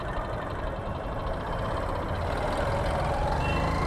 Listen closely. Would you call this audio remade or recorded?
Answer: recorded